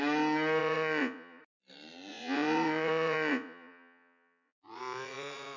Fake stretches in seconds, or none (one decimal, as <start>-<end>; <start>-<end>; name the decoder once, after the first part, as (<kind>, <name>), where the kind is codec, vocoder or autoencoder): 0.6-1.4 (vocoder, Vocos); 2.1-5.6